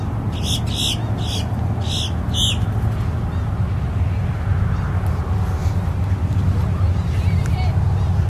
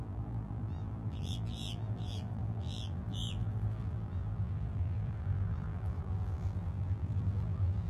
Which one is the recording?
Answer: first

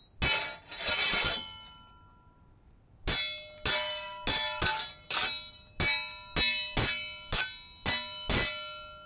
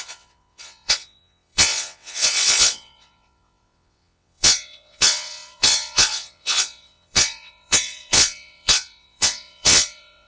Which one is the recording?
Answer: first